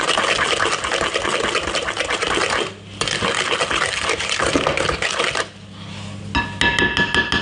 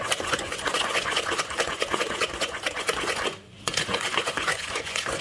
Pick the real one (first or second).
first